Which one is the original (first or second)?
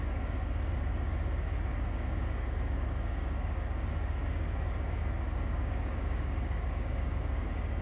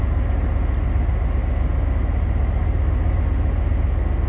second